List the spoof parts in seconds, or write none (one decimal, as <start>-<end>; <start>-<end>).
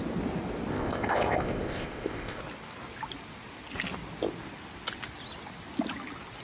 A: 0.7-2.4